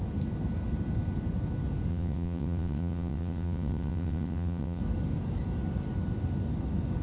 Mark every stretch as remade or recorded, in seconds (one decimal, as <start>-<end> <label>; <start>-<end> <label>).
0.0-1.9 recorded; 1.9-4.8 remade; 4.8-7.0 recorded